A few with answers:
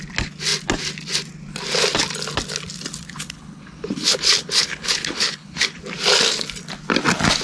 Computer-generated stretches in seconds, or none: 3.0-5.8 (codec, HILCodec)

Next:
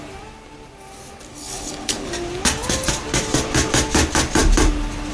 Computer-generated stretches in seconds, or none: 1.3-2.1 (codec, HILCodec)

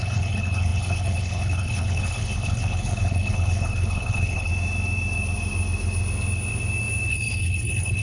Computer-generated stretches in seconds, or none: 0.0-4.5 (codec, HILCodec); 7.1-8.0

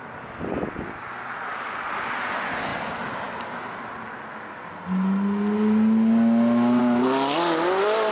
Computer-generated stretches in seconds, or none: none

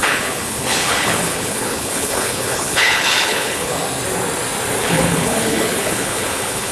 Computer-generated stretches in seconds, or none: 0.0-3.8 (codec, HILCodec); 4.8-6.7

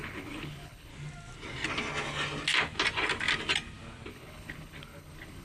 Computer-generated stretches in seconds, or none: 0.0-0.9 (codec, HILCodec); 4.1-5.4